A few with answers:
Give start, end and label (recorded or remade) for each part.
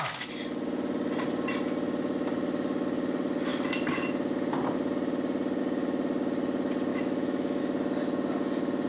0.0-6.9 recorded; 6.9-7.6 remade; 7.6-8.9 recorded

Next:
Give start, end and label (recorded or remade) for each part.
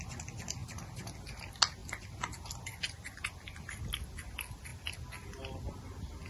0.0-6.3 recorded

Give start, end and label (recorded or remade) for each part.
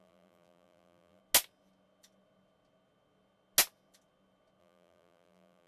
0.0-1.2 remade; 1.2-4.6 recorded; 4.6-5.7 remade